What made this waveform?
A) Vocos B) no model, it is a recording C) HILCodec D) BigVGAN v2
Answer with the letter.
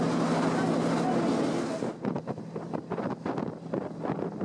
B